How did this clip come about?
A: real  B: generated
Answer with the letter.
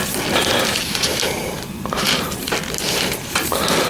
A